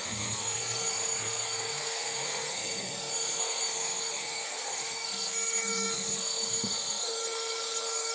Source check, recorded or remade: remade